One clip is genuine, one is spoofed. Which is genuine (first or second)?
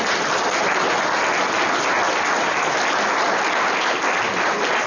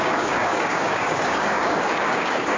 first